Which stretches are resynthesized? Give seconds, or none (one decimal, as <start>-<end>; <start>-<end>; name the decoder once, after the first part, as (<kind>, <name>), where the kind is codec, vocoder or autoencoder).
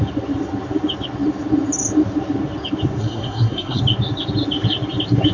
3.0-3.8 (codec, SNAC)